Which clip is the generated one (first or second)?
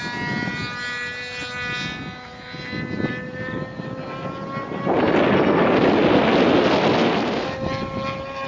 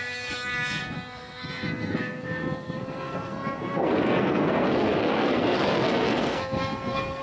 second